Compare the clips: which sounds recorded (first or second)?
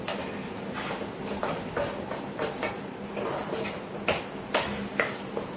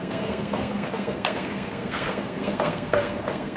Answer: first